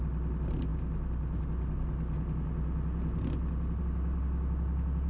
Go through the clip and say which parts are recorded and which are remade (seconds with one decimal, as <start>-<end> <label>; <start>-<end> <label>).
0.0-5.1 recorded